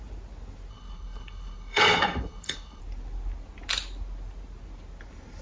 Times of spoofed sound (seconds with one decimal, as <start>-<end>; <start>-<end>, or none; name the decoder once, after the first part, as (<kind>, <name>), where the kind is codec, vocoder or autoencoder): 0.7-2.8 (codec, HILCodec)